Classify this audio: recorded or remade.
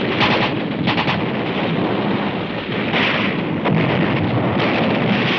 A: recorded